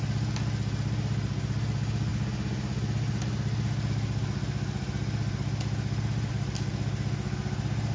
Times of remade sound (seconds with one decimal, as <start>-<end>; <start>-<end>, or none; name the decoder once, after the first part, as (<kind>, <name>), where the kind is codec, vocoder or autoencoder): none